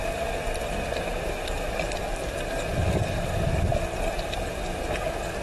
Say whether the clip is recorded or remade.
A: recorded